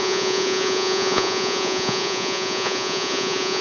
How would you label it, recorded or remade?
remade